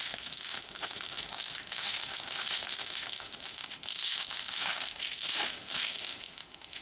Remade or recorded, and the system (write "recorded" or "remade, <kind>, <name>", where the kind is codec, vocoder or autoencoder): remade, autoencoder, DAC-VAE